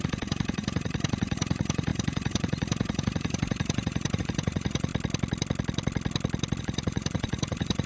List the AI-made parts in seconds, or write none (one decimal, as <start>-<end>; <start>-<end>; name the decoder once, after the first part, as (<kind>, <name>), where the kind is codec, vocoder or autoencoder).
0.0-4.9 (vocoder, Vocos); 6.6-7.9